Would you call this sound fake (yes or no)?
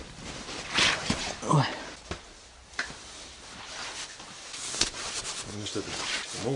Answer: no